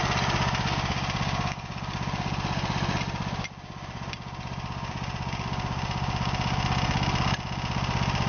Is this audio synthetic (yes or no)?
no